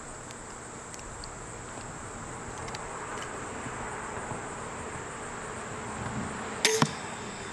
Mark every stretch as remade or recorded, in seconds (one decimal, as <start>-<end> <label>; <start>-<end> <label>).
0.0-6.7 recorded; 6.7-7.5 remade